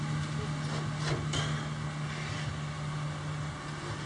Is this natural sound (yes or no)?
yes